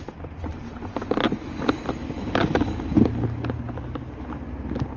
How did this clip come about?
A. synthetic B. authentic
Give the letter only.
B